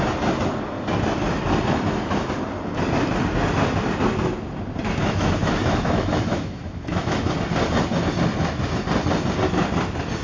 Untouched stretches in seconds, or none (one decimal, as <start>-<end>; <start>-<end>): 0.0-5.0; 7.3-10.2